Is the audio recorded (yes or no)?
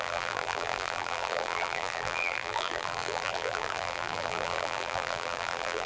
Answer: no